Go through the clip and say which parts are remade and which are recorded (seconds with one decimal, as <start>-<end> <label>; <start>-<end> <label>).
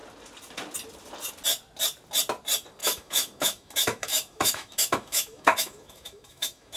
0.0-2.8 recorded; 2.8-6.8 remade